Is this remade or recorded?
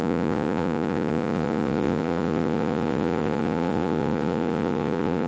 remade